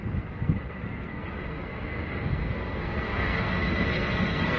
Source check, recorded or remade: remade